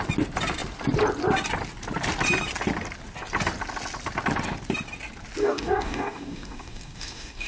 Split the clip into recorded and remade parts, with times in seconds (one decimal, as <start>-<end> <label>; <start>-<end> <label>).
0.0-5.4 recorded; 5.4-7.5 remade